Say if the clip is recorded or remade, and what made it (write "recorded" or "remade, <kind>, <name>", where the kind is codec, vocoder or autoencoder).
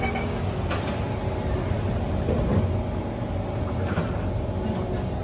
recorded